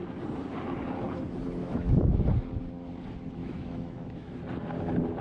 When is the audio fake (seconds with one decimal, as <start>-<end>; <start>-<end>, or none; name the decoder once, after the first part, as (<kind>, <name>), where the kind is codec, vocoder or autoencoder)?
1.6-2.2 (autoencoder, DAC-VAE); 3.4-4.4